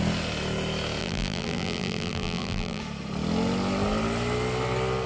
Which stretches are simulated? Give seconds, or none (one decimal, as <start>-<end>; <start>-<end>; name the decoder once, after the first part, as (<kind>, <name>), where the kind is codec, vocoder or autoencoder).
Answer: 1.0-2.8 (vocoder, BigVGAN v2)